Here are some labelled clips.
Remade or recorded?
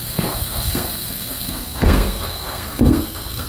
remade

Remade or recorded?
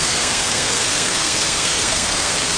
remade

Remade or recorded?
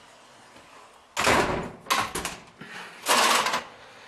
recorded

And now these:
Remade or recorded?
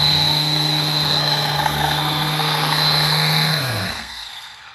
remade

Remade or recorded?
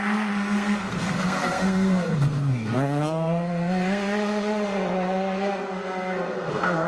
remade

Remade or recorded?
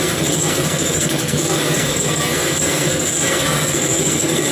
remade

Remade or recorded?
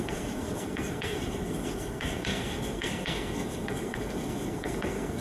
remade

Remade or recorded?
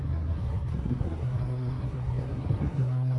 remade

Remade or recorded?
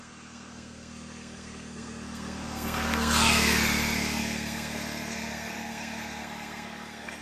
remade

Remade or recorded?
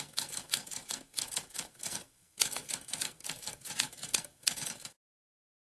remade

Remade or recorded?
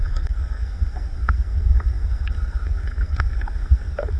remade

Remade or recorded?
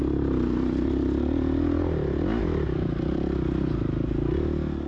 recorded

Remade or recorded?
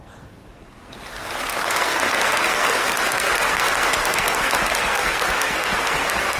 remade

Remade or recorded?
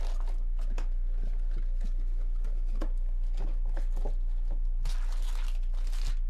recorded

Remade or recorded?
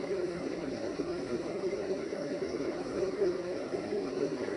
remade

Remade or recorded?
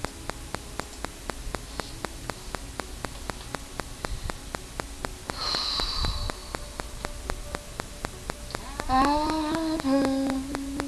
recorded